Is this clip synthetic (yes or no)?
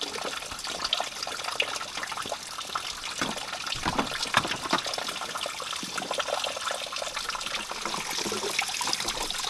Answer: no